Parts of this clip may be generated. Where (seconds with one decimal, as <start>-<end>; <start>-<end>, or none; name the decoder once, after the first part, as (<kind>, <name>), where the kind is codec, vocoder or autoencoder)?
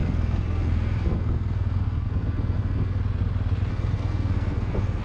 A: 0.0-3.0 (codec, SNAC); 3.7-5.0